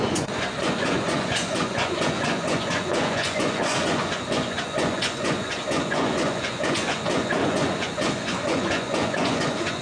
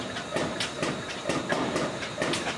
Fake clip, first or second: first